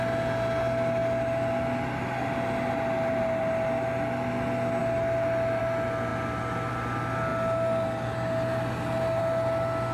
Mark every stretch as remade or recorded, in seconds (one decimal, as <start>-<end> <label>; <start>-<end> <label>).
0.0-9.9 recorded